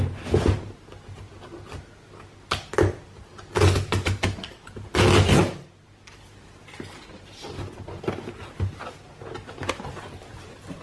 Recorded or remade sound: recorded